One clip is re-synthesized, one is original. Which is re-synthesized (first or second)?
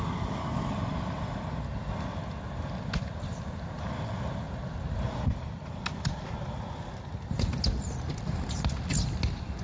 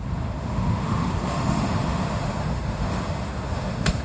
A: second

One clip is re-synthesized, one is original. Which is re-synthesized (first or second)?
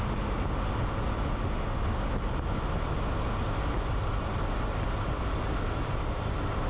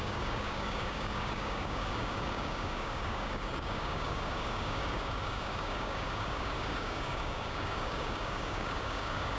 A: second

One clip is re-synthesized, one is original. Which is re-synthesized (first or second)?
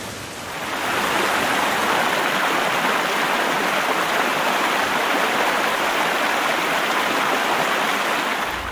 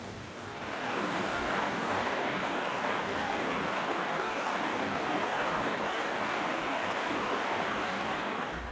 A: second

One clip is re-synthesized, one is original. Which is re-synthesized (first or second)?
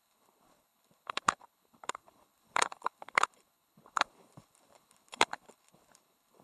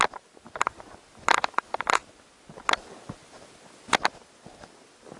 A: first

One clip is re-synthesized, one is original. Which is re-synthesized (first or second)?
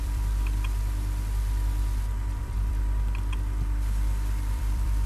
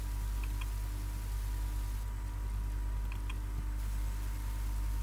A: first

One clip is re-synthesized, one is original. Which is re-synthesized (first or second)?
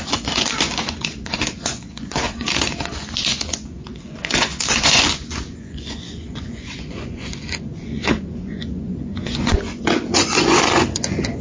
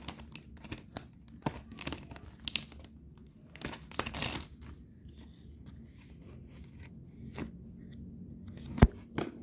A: first